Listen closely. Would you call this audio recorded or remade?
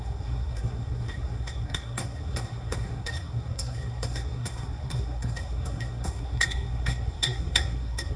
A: remade